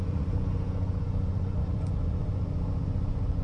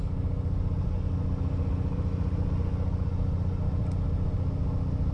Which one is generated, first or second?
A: first